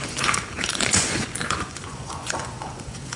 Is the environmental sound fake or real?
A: fake